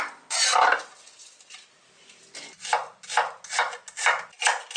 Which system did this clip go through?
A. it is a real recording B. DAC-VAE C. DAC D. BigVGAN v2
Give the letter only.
A